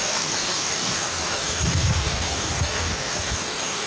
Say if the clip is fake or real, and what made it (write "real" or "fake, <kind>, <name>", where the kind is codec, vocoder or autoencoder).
fake, codec, DAC